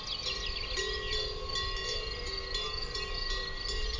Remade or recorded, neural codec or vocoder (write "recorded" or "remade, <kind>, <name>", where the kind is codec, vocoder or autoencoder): recorded